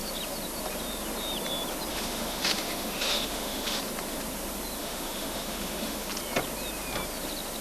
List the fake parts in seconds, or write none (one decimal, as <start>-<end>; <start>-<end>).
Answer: 1.9-3.8; 4.8-6.1